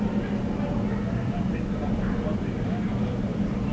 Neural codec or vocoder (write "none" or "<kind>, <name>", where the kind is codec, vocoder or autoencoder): none